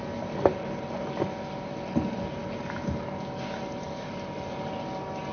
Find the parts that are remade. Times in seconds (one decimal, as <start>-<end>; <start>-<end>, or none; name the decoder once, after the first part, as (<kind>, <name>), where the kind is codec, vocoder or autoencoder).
none